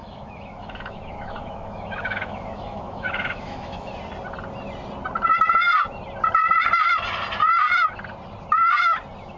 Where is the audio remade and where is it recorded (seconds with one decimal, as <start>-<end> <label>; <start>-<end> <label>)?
0.0-3.9 remade; 3.9-9.4 recorded

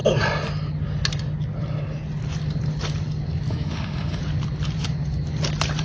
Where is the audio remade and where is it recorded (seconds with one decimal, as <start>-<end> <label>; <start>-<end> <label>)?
0.0-3.5 recorded; 3.5-4.2 remade; 4.2-5.8 recorded

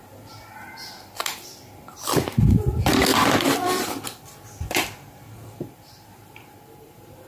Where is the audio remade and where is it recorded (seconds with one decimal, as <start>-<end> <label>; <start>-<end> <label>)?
0.0-7.3 recorded